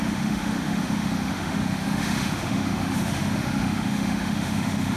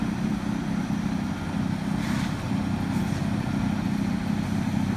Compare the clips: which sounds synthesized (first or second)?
first